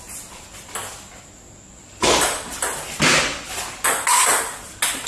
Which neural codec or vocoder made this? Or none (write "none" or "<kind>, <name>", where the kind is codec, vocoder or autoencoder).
none